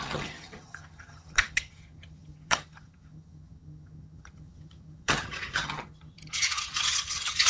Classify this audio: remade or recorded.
remade